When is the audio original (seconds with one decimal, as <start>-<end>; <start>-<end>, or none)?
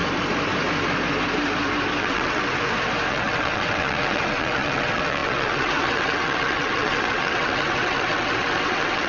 0.0-2.0; 2.4-3.1